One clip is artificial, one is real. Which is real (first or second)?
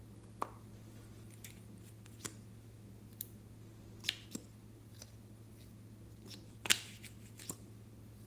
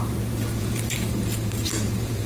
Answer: first